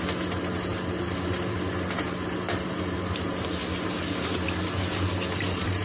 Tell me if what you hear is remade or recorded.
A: recorded